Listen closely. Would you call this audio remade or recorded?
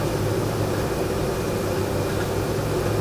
recorded